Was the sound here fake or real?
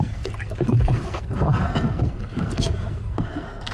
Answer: fake